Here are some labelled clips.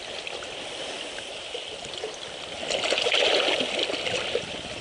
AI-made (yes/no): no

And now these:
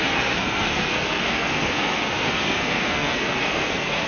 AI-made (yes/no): yes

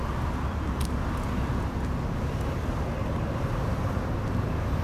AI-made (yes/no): no